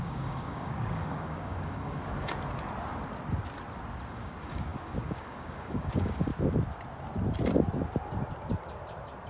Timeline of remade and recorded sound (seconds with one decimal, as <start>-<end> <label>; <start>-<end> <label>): 0.0-2.0 remade; 2.0-4.1 recorded; 4.1-6.3 remade; 6.3-9.3 recorded